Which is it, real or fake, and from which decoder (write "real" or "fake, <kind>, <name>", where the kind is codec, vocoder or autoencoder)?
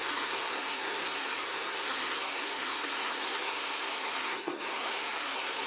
fake, codec, SNAC